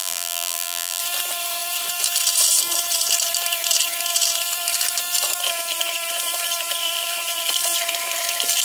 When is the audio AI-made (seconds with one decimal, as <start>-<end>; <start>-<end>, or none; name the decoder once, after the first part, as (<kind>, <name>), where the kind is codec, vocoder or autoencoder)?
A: 0.0-1.0 (vocoder, BigVGAN v2)